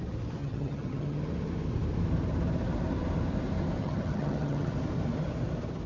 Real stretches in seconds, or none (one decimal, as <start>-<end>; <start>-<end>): 0.0-0.4; 1.2-3.8; 4.7-5.9